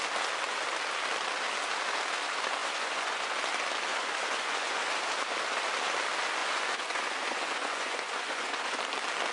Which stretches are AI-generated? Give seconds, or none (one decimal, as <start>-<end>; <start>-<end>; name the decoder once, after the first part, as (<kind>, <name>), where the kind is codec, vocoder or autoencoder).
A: 2.6-3.3 (vocoder, Vocos); 3.9-4.8; 6.4-8.8